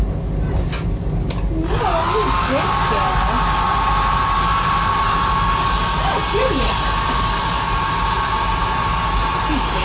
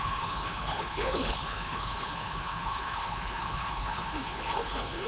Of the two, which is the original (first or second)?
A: first